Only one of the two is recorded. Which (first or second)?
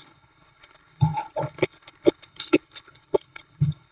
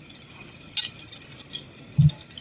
second